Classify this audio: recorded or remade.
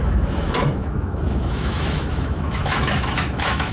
remade